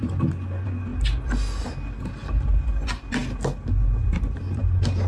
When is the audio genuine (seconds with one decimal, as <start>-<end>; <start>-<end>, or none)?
0.0-5.1